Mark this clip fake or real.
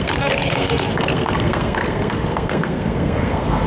fake